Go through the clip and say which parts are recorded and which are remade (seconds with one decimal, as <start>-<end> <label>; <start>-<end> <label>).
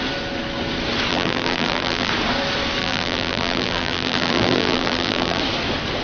0.0-1.1 recorded; 1.1-2.1 remade; 2.1-2.8 recorded; 2.8-5.4 remade; 5.4-6.0 recorded